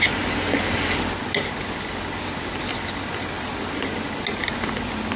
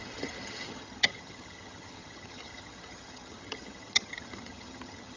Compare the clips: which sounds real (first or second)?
first